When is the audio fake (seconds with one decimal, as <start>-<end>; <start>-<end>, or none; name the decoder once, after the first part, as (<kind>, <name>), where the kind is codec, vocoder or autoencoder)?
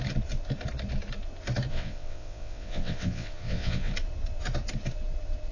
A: 1.7-3.9 (vocoder, WaveNeXt)